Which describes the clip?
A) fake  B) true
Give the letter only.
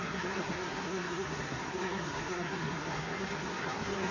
A